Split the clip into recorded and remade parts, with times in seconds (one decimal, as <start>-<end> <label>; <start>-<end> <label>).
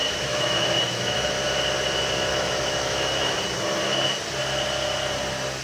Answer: 0.0-1.3 remade; 1.3-2.3 recorded; 2.3-3.8 remade; 3.8-5.6 recorded